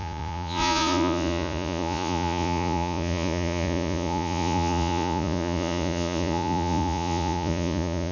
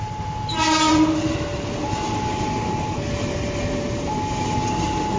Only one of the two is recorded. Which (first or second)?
second